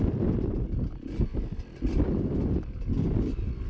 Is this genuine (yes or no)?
yes